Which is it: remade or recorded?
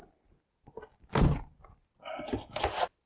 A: recorded